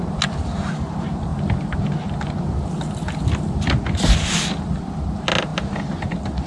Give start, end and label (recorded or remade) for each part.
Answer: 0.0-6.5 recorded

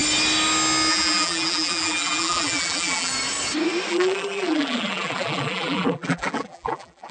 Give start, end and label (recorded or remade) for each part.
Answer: 0.0-0.9 recorded; 0.9-3.1 remade; 3.1-3.9 recorded; 3.9-7.1 remade

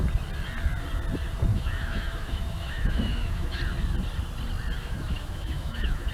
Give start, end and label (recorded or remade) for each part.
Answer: 0.0-1.5 recorded; 1.5-3.6 remade; 3.6-4.8 recorded; 4.8-6.1 remade

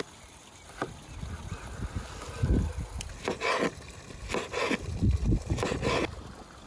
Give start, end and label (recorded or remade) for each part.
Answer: 0.0-6.7 recorded

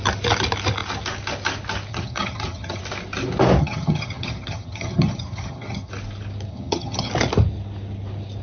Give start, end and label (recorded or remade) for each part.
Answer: 0.0-1.9 recorded; 1.9-2.8 remade; 2.8-3.6 recorded; 3.6-5.9 remade; 5.9-6.5 recorded; 6.5-7.1 remade; 7.1-8.4 recorded

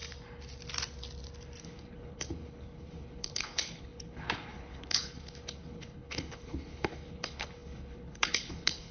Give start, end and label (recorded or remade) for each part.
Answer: 0.0-1.6 recorded; 1.6-8.9 remade

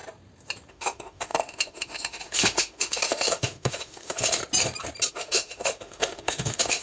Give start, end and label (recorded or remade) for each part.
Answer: 0.0-0.7 recorded; 0.7-4.4 remade; 4.4-5.1 recorded; 5.1-6.8 remade

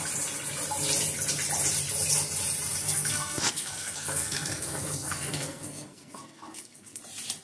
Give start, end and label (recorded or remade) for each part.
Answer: 0.0-2.8 recorded; 2.8-7.0 remade; 7.0-7.4 recorded